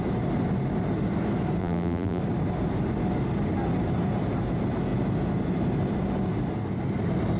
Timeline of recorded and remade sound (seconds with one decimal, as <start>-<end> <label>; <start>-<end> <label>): 0.0-1.6 recorded; 1.6-2.2 remade; 2.2-7.4 recorded